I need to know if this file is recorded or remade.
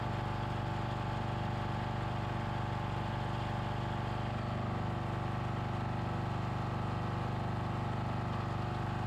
recorded